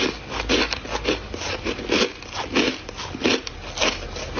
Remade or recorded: recorded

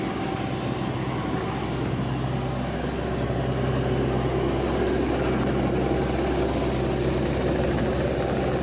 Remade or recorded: recorded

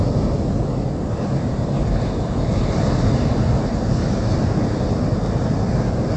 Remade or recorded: recorded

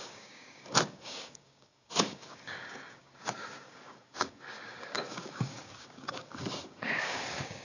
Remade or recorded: remade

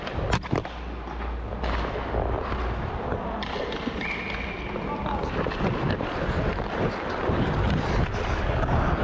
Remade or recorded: recorded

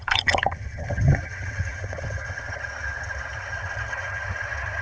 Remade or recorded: remade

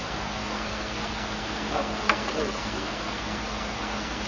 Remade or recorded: remade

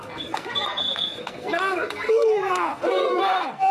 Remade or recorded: remade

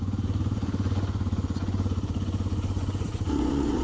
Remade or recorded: remade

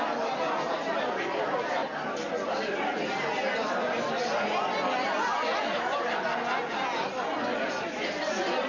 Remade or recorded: recorded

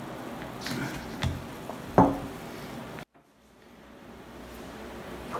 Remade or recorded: recorded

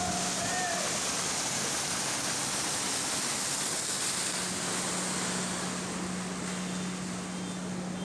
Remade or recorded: recorded